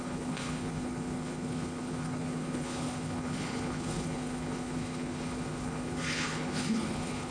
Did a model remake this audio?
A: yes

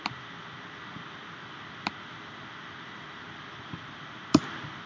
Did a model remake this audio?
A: no